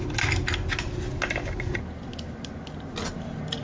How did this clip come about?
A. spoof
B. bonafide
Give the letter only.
B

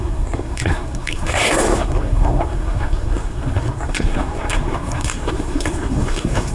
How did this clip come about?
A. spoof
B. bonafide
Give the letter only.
A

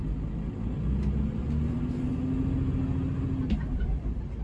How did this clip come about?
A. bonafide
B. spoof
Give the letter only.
A